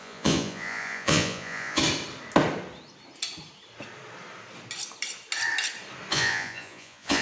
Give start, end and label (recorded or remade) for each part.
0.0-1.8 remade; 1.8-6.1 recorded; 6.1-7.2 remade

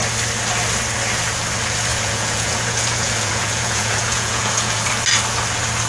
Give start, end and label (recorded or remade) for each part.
0.0-1.9 recorded; 1.9-4.9 remade; 4.9-5.9 recorded

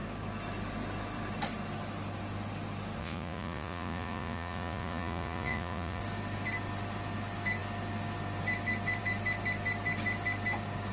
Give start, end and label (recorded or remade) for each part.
0.0-3.0 recorded; 3.0-6.0 remade; 6.0-10.9 recorded

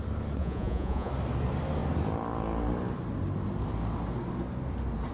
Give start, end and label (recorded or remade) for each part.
0.0-0.4 recorded; 0.4-1.1 remade; 1.1-5.1 recorded

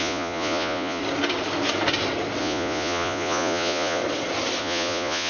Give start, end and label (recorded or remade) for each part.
0.0-1.0 remade; 1.0-2.4 recorded; 2.4-4.0 remade; 4.0-4.6 recorded; 4.6-5.3 remade

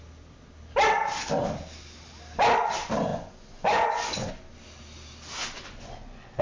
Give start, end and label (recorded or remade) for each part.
0.0-3.1 recorded; 3.1-4.3 remade; 4.3-5.4 recorded; 5.4-6.4 remade

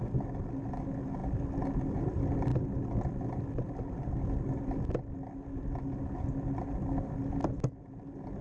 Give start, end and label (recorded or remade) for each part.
0.0-8.4 recorded

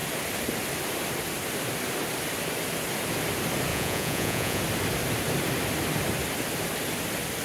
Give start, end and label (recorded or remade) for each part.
0.0-3.7 recorded; 3.7-4.6 remade; 4.6-7.4 recorded